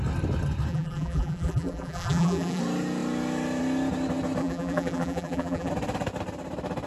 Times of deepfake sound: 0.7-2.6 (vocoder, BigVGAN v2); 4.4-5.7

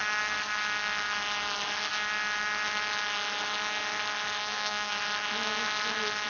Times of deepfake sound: 4.4-4.9 (codec, SNAC)